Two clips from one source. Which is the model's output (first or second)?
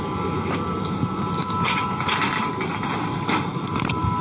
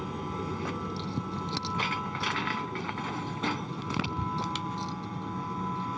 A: first